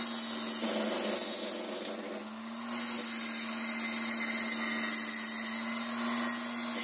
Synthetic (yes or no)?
no